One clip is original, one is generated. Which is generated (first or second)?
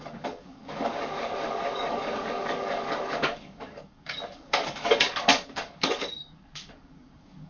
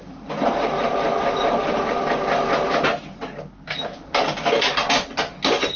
first